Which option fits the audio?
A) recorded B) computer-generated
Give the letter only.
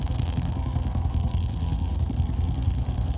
B